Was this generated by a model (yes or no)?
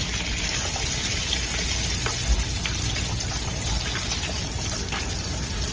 no